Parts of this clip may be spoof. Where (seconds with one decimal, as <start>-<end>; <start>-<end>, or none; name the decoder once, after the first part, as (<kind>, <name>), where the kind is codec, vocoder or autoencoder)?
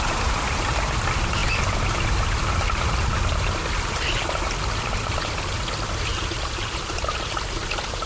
6.1-6.9 (vocoder, BigVGAN v2)